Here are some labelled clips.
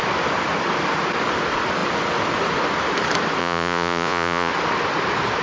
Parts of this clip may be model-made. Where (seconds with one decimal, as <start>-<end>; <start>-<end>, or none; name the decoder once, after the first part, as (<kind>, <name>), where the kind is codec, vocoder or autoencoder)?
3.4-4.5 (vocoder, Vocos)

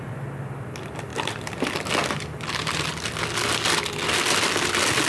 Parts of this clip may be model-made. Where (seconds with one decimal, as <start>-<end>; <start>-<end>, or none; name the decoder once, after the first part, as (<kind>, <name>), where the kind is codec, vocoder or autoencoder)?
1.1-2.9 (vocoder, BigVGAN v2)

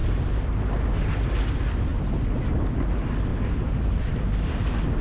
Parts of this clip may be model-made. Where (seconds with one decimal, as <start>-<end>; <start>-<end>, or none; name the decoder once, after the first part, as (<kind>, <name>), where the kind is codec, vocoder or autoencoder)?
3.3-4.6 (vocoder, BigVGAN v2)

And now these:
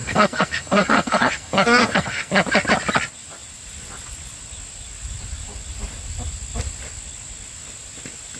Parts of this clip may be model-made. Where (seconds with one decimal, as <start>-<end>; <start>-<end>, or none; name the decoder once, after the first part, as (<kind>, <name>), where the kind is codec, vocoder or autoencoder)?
0.0-2.3 (codec, SNAC)